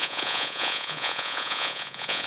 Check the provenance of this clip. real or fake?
fake